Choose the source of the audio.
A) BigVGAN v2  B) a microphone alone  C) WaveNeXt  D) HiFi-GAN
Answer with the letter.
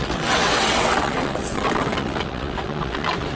C